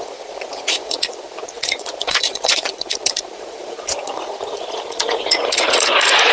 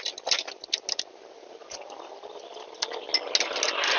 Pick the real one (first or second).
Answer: second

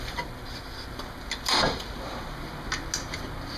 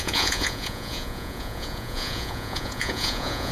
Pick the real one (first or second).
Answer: first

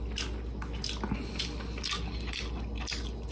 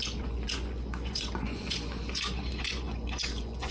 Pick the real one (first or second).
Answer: first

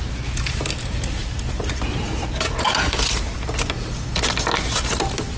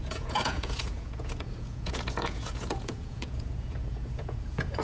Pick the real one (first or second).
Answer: first